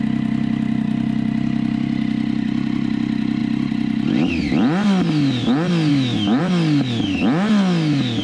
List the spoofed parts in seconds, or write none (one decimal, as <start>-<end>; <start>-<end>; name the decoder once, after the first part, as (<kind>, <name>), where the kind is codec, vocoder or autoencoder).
5.9-6.4 (autoencoder, DAC-VAE)